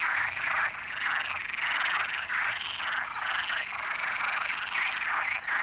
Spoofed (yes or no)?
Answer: no